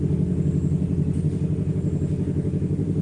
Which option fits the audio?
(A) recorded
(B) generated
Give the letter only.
A